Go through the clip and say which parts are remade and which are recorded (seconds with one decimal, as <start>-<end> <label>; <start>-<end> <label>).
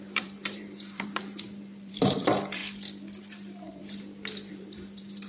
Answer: 0.0-2.6 remade; 2.6-3.2 recorded; 3.2-3.8 remade; 3.8-4.5 recorded; 4.5-5.3 remade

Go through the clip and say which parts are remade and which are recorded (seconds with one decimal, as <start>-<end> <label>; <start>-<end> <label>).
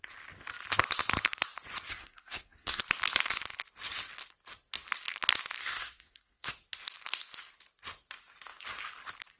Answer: 0.0-1.9 recorded; 1.9-2.8 remade; 2.8-5.6 recorded; 5.6-6.5 remade; 6.5-9.4 recorded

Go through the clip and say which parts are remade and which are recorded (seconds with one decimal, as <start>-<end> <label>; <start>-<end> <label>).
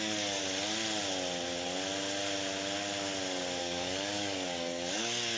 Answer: 0.0-0.4 remade; 0.4-3.6 recorded; 3.6-5.4 remade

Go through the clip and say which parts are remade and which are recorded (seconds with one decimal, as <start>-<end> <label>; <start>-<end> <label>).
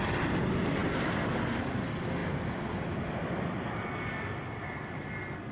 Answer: 0.0-5.5 recorded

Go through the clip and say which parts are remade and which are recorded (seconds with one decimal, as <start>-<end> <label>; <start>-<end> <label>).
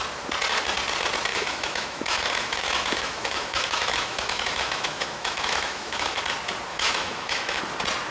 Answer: 0.0-1.3 recorded; 1.3-6.2 remade; 6.2-6.7 recorded; 6.7-7.6 remade; 7.6-8.1 recorded